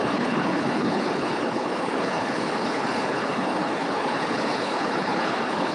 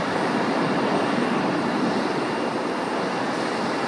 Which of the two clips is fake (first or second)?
first